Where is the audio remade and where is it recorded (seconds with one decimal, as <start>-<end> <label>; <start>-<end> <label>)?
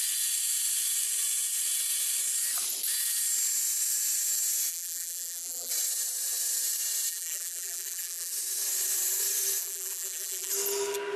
0.0-4.7 recorded; 4.7-5.7 remade; 5.7-7.1 recorded; 7.1-8.3 remade; 8.3-9.6 recorded; 9.6-10.5 remade; 10.5-11.2 recorded